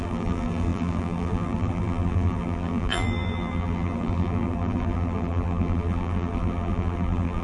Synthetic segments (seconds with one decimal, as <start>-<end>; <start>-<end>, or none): 0.0-7.4